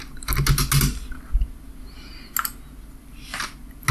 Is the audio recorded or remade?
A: recorded